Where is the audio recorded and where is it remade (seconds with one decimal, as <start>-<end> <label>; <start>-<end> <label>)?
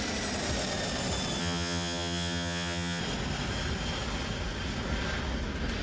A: 0.0-1.4 recorded; 1.4-3.0 remade; 3.0-5.8 recorded